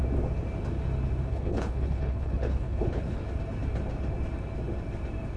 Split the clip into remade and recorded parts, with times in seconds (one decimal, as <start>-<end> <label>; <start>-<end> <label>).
0.0-1.3 recorded; 1.3-3.2 remade; 3.2-5.4 recorded